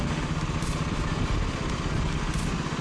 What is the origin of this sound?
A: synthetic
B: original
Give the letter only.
B